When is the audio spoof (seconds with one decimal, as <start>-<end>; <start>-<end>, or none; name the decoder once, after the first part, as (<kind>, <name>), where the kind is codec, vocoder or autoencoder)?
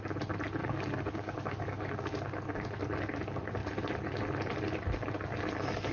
0.6-1.9 (codec, DAC)